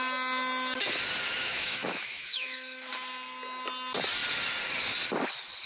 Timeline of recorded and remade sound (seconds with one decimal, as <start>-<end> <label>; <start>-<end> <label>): 0.0-1.4 recorded; 1.4-2.9 remade; 2.9-5.7 recorded